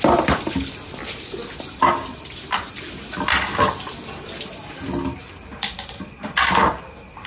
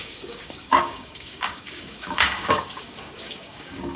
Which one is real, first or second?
first